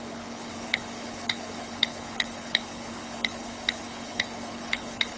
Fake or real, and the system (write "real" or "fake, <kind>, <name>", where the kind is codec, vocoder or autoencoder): fake, codec, HILCodec